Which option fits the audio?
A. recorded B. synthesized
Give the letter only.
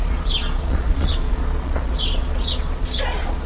B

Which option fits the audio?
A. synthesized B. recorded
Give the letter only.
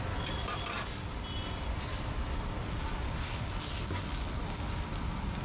B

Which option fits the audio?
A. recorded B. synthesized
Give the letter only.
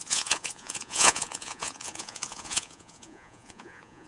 B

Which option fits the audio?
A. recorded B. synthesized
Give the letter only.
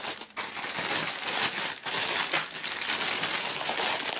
A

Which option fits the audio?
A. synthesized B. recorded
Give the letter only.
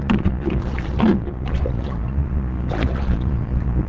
A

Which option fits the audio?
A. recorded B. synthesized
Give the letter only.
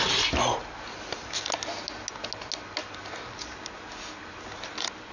A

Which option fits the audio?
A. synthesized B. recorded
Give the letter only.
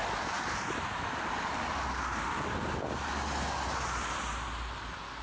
B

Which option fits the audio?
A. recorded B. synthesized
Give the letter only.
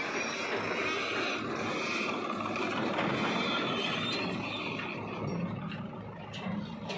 A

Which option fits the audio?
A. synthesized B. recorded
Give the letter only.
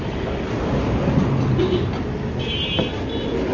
B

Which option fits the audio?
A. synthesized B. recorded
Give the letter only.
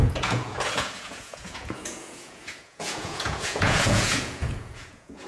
A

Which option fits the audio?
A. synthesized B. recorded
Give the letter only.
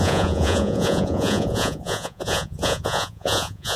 A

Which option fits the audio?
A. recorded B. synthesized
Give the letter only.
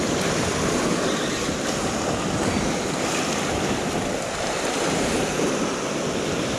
A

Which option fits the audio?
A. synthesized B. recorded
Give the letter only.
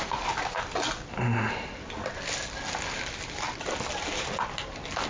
B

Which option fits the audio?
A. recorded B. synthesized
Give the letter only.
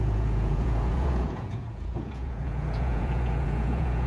B